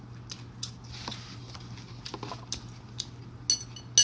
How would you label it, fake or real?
real